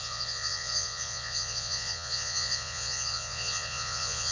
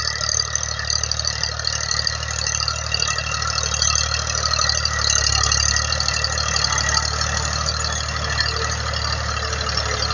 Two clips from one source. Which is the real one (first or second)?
second